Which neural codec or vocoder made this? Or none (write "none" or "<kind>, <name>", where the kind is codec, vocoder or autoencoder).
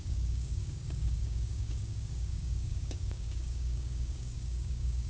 codec, DAC